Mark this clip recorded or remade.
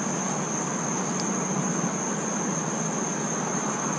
recorded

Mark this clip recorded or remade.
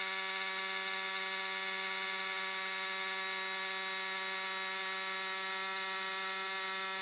recorded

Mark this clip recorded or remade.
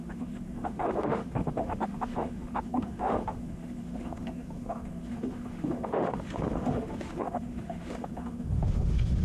remade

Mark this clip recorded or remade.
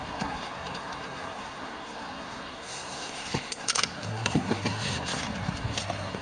remade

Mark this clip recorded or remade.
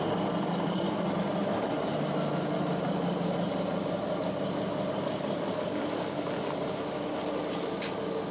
recorded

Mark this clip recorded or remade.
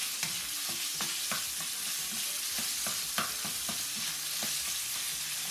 recorded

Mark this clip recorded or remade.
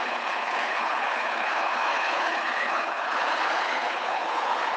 remade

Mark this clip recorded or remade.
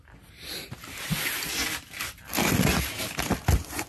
recorded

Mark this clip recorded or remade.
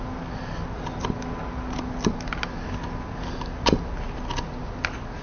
recorded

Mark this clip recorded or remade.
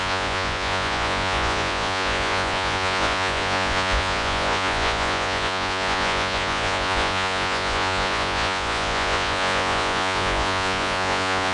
remade